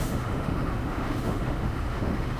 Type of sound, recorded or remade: remade